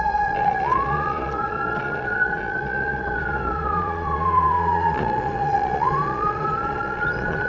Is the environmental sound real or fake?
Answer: fake